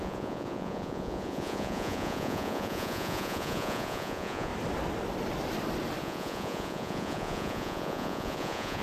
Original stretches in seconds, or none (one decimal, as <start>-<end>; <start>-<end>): 4.5-6.0

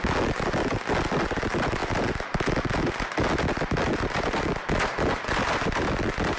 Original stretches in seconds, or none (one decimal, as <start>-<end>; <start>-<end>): 0.0-6.4

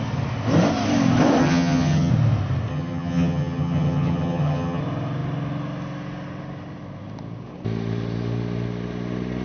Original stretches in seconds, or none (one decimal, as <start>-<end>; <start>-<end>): 0.0-1.4; 2.1-2.7; 4.8-9.4

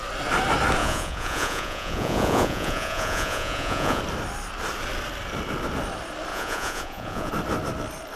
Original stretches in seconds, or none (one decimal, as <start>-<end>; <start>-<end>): 0.0-0.8; 4.0-6.3; 7.3-8.2

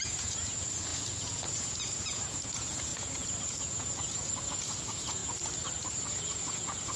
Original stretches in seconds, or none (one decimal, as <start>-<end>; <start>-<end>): 5.2-5.9